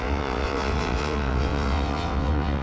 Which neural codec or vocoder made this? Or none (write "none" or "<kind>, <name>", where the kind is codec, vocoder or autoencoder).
vocoder, WaveNeXt